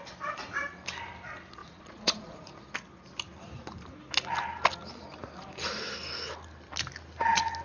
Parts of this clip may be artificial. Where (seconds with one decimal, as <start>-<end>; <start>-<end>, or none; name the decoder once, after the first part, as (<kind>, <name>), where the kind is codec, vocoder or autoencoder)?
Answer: 1.6-2.6 (vocoder, Vocos)